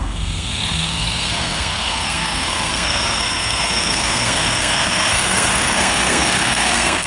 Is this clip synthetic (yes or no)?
yes